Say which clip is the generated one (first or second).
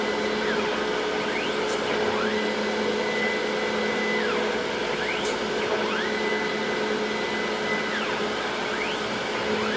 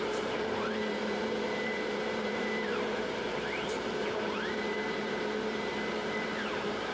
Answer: second